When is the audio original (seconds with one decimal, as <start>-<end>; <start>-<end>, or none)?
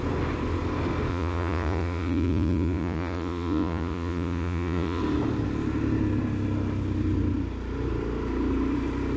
0.0-1.1; 5.0-9.2